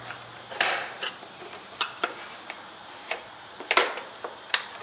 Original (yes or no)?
no